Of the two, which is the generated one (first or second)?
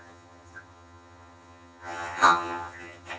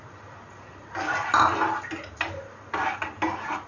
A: first